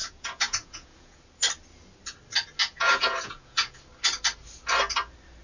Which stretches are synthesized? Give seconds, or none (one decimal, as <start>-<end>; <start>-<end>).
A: 0.0-1.2; 2.6-3.8